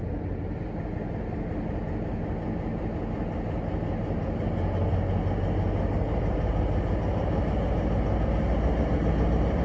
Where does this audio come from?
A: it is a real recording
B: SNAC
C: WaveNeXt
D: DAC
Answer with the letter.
A